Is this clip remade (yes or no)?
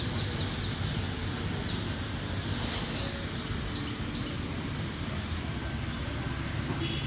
no